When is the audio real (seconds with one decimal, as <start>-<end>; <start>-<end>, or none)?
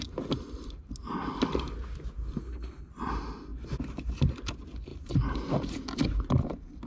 0.0-2.4; 2.9-6.9